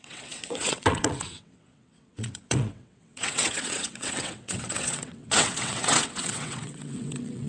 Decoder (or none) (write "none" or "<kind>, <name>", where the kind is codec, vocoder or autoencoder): vocoder, WaveNeXt